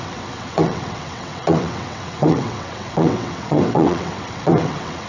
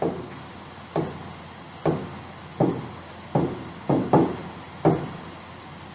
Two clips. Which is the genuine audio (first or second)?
second